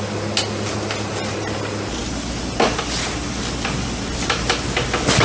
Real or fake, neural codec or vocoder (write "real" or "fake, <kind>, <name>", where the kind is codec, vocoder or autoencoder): real